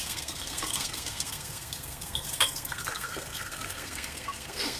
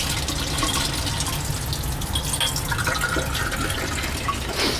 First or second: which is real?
second